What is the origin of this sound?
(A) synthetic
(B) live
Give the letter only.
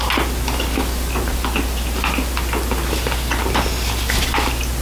B